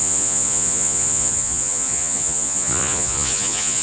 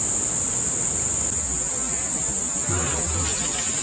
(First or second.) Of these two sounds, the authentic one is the second